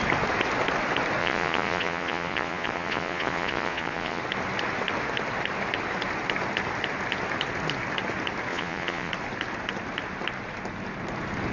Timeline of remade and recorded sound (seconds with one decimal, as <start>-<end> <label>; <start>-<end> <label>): 0.0-1.2 recorded; 1.2-4.2 remade; 4.2-8.5 recorded; 8.5-9.1 remade; 9.1-11.5 recorded

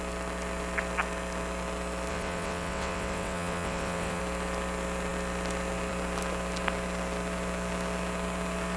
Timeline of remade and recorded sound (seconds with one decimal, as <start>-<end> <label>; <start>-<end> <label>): 0.0-2.1 recorded; 2.1-4.2 remade; 4.2-8.8 recorded

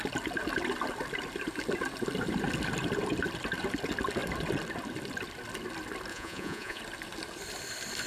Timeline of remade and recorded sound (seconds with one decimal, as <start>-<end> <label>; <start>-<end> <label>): 0.0-6.1 recorded; 6.1-6.8 remade; 6.8-8.1 recorded

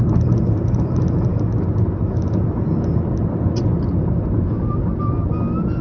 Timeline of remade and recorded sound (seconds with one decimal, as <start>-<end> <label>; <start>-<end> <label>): 0.0-5.8 recorded

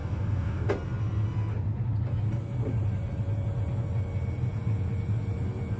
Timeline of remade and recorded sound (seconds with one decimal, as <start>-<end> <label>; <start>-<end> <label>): 0.0-0.7 remade; 0.7-5.8 recorded

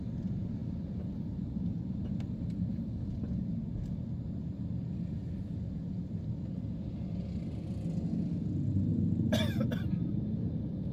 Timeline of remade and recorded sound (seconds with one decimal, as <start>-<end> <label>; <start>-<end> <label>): 0.0-10.9 recorded

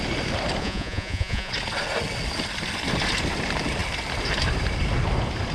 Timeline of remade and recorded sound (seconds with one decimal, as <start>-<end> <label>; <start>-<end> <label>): 0.0-0.6 recorded; 0.6-1.5 remade; 1.5-5.5 recorded